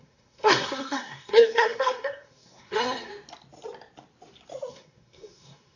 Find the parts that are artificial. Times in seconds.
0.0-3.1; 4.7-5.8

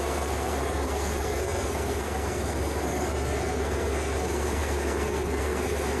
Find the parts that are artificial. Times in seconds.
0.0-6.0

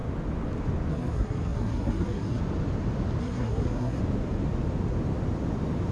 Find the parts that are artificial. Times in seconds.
0.9-2.4; 3.2-4.0